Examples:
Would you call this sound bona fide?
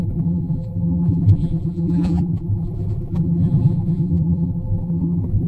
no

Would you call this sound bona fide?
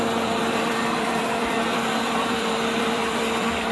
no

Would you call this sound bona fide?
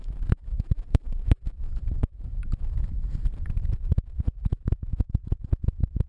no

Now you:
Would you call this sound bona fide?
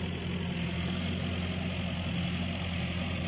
yes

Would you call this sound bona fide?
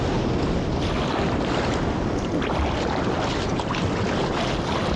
yes